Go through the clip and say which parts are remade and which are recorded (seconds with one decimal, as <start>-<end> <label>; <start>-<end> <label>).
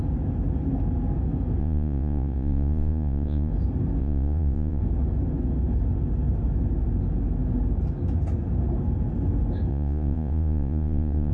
0.0-1.6 recorded; 1.6-3.5 remade; 3.5-4.0 recorded; 4.0-4.8 remade; 4.8-9.7 recorded; 9.7-11.3 remade